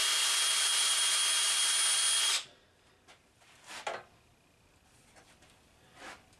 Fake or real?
real